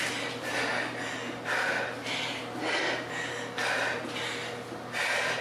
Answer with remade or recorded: recorded